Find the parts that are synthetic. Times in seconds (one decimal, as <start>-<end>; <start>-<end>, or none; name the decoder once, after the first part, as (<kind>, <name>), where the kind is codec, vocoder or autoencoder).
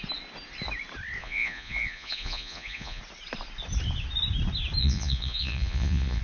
1.2-3.0 (vocoder, Vocos); 4.8-6.2